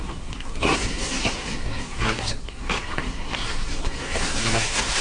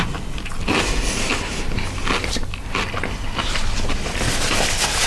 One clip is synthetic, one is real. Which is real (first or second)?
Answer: second